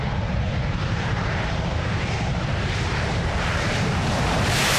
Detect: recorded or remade remade